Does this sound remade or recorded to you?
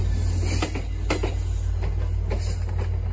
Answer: recorded